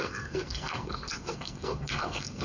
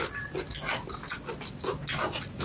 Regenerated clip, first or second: first